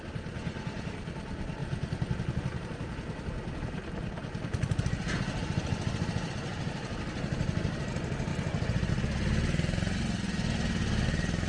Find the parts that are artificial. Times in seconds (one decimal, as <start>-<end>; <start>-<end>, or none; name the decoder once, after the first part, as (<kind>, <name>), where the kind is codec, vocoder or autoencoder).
none